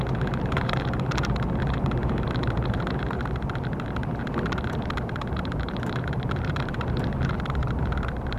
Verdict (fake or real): fake